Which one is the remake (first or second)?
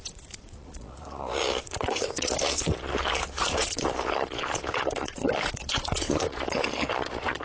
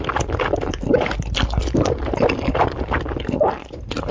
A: first